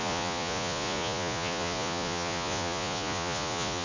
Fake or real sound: fake